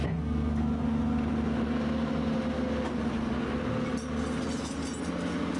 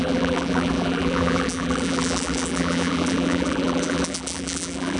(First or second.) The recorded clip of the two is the first